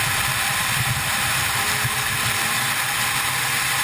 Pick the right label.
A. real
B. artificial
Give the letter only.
A